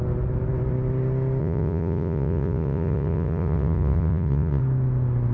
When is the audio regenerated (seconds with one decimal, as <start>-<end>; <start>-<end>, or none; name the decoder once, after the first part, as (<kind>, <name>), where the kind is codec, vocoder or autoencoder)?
1.4-4.6 (vocoder, Vocos)